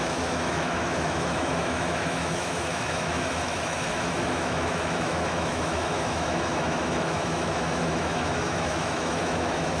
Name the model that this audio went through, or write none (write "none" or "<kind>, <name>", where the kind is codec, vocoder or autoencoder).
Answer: autoencoder, DAC-VAE